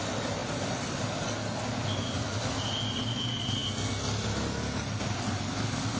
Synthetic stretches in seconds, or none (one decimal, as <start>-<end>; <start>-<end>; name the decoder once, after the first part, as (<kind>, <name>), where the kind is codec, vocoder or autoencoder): none